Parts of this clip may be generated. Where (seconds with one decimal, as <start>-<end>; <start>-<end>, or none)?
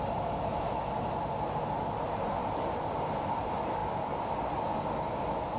none